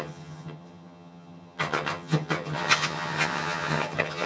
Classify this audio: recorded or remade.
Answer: remade